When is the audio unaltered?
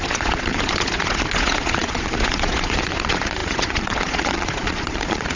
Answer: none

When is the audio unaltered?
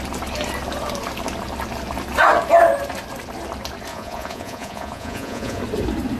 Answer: 0.0-3.9; 5.6-6.2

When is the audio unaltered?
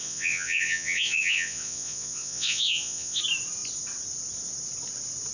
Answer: 3.2-5.3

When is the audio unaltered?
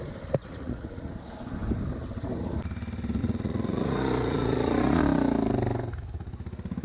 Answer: 0.0-0.4; 1.1-3.2; 5.0-6.8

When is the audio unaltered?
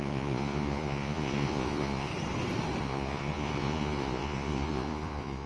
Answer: 2.1-2.8